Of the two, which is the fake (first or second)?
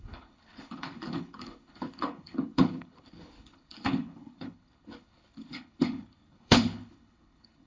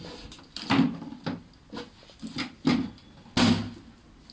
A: first